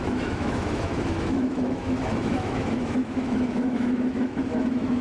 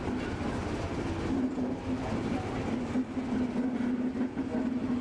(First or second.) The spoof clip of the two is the first